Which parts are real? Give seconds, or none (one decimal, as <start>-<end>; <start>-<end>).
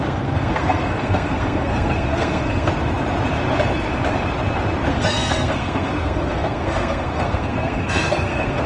2.7-4.9